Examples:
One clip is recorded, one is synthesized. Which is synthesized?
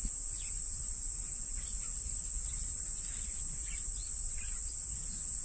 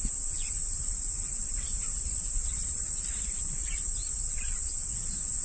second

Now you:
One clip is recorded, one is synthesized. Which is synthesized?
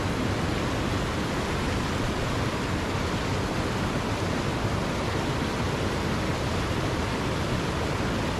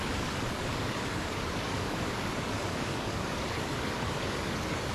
second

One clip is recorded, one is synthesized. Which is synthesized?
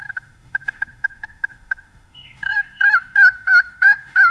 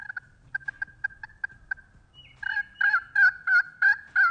first